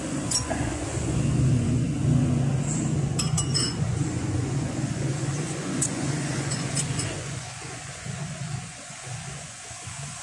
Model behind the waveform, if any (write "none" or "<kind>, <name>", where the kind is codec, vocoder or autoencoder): vocoder, Vocos